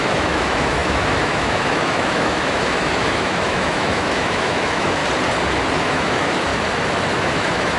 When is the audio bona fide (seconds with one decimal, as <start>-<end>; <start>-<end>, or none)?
5.0-5.8; 6.5-7.1